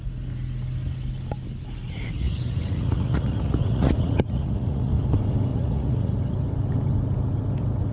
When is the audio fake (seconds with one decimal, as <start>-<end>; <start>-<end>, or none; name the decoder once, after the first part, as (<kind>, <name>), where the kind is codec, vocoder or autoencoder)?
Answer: 1.8-4.9 (vocoder, Vocos); 5.5-6.1